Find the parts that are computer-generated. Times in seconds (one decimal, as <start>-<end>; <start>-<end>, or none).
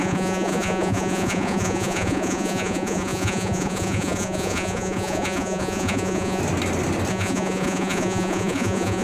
0.0-6.4; 7.1-9.0